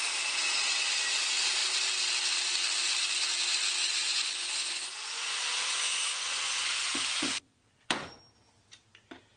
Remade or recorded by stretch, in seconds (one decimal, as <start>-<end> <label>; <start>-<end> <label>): 0.0-3.8 recorded; 3.8-8.2 remade; 8.2-9.4 recorded